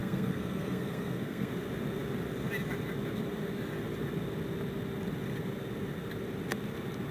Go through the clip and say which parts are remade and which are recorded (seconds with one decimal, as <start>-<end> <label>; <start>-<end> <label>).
0.0-1.5 remade; 1.5-7.1 recorded